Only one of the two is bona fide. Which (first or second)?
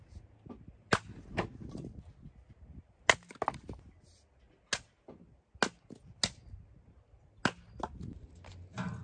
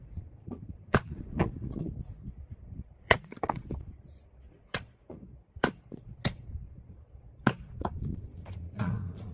first